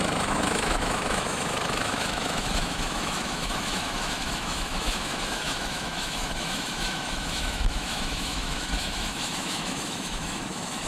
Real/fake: fake